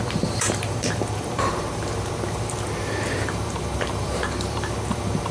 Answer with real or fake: fake